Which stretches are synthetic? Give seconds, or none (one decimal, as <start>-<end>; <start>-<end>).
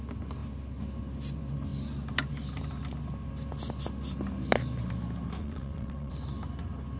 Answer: 5.4-6.1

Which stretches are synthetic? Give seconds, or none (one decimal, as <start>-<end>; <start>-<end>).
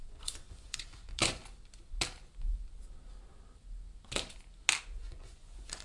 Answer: 0.0-1.4; 4.8-5.8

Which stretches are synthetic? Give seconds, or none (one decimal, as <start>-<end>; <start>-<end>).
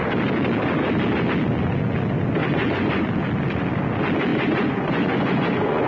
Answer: 2.4-3.1; 4.3-5.9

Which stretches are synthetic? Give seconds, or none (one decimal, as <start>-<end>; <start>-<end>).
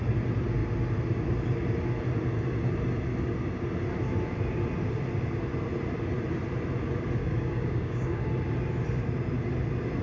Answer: 7.2-8.2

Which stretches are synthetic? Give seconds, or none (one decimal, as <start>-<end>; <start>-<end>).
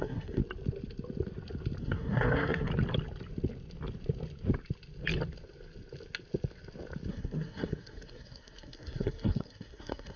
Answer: 0.0-0.4; 1.8-2.7; 7.1-10.2